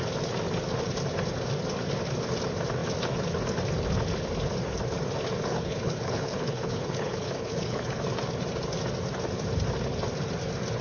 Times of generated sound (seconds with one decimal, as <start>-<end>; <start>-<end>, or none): 5.5-7.9